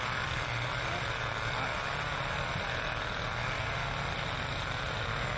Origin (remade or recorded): recorded